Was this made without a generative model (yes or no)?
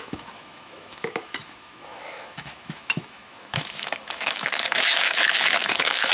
no